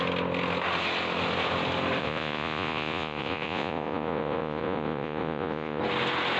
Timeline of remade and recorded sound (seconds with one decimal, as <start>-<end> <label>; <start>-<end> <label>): 0.0-2.0 recorded; 2.0-5.8 remade; 5.8-6.4 recorded